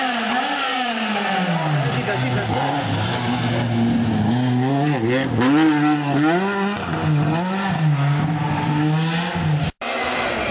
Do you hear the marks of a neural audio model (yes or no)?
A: no